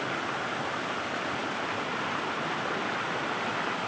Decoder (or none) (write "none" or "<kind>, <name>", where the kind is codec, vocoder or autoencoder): none